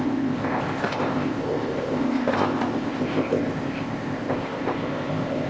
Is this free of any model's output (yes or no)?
no